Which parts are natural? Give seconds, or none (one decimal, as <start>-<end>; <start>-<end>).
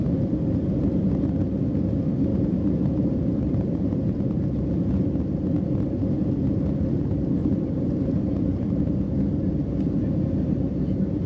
0.0-2.3; 4.2-7.4; 8.9-11.3